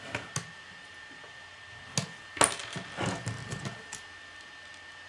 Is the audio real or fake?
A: real